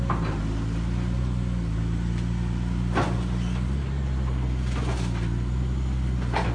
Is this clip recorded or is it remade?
recorded